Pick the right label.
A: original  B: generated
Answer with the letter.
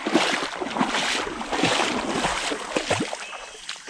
A